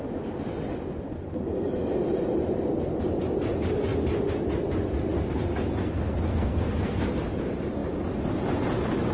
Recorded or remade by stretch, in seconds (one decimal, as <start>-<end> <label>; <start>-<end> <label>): 0.0-5.8 recorded; 5.8-7.0 remade; 7.0-9.1 recorded